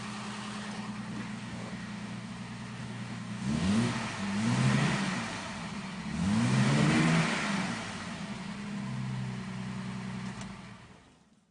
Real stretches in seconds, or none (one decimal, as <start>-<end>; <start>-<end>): 0.0-1.3; 2.3-2.8; 3.9-11.5